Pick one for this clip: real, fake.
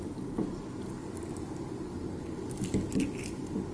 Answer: real